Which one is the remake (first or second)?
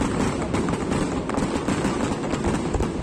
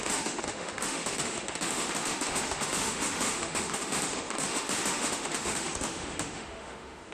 second